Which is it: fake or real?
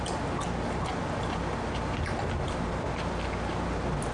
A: real